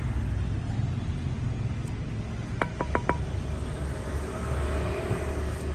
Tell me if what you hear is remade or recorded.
recorded